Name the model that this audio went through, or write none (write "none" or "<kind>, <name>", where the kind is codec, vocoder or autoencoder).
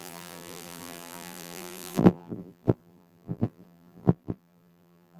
vocoder, BigVGAN v2